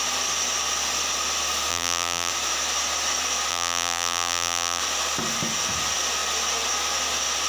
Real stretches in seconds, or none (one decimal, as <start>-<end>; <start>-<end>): 0.0-1.7; 2.3-3.5; 4.8-7.5